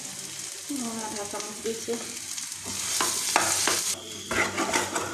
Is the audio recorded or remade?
recorded